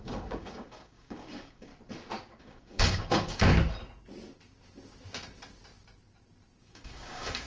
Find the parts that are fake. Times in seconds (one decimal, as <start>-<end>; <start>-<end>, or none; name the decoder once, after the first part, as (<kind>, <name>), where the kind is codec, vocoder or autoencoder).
0.0-1.7 (codec, DAC); 2.4-3.5; 6.6-7.5